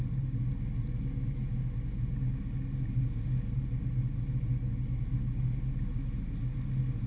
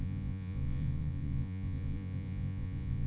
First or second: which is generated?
second